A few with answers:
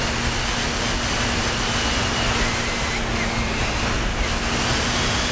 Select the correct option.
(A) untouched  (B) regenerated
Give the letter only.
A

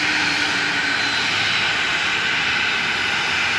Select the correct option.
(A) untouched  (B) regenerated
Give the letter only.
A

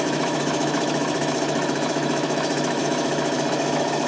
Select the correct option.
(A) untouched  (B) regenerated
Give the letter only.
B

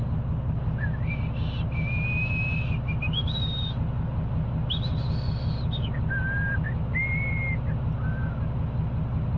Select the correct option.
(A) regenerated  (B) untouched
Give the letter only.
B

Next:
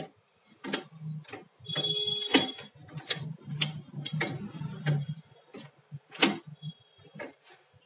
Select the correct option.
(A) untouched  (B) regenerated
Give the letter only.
A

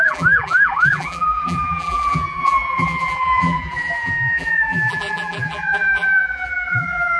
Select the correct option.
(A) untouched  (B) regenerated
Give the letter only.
B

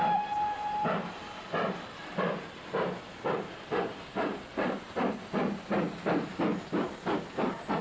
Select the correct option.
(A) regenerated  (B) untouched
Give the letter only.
B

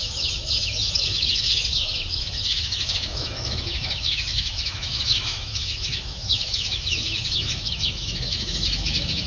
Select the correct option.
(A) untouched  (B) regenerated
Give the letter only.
B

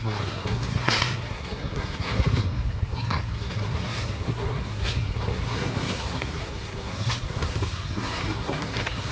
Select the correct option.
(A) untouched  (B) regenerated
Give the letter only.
B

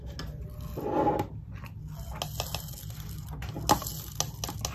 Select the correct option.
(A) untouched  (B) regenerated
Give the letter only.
A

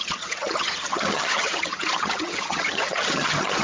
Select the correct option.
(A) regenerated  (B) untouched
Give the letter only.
A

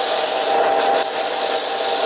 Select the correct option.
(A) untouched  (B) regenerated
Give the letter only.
A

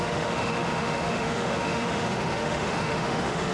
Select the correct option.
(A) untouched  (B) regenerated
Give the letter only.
B